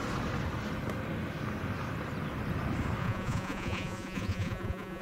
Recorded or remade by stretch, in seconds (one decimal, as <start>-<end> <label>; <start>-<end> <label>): 0.0-3.0 recorded; 3.0-5.0 remade